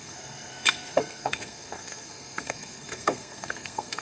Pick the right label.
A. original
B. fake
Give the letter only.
B